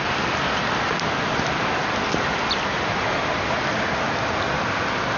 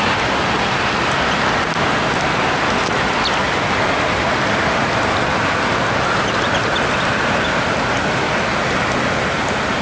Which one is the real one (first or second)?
second